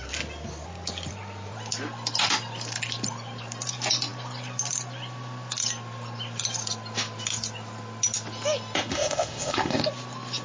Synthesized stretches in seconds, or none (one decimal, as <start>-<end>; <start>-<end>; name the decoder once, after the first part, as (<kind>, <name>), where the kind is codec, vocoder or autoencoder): 8.9-9.8 (codec, ZipCodec)